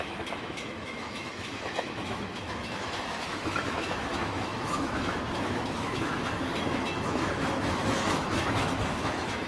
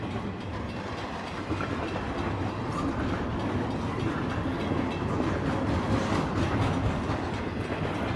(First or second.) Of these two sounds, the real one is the second